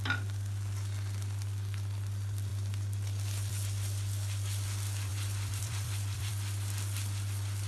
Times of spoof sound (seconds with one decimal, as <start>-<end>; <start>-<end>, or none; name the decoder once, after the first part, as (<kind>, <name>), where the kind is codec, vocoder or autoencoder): 5.1-6.3 (vocoder, BigVGAN v2)